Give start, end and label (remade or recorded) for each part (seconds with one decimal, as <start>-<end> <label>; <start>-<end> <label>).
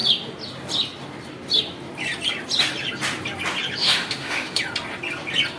0.0-3.8 recorded; 3.8-4.6 remade; 4.6-5.6 recorded